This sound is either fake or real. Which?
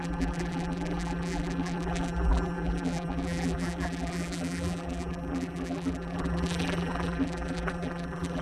fake